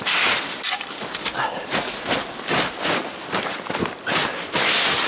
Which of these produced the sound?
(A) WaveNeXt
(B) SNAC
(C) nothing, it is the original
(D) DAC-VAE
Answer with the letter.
C